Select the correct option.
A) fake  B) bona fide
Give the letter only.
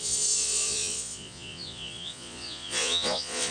A